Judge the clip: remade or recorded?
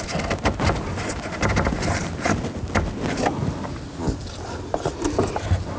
recorded